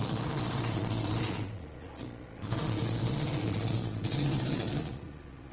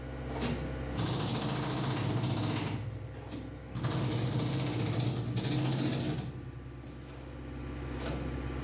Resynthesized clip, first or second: first